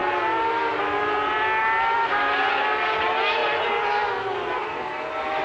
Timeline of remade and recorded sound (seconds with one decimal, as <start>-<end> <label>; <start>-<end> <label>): 0.0-5.4 recorded

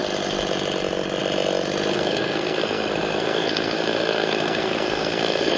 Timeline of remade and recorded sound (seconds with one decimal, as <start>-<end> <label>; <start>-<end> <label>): 0.0-1.9 recorded; 1.9-5.6 remade

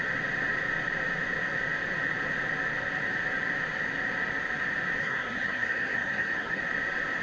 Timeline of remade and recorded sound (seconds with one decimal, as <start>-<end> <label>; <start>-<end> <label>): 0.0-5.0 recorded; 5.0-6.6 remade; 6.6-7.2 recorded

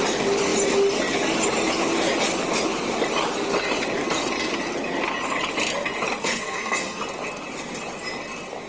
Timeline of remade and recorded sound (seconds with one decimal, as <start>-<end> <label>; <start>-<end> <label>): 0.0-6.2 recorded; 6.2-7.0 remade; 7.0-8.7 recorded

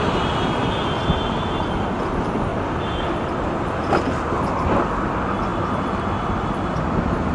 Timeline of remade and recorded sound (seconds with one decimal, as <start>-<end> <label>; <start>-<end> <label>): 0.0-7.3 recorded